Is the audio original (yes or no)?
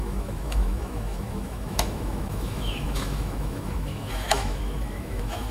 no